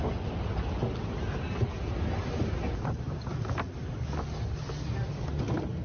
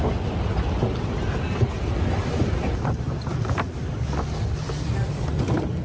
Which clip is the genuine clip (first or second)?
first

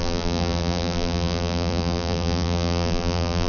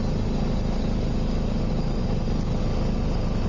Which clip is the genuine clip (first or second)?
second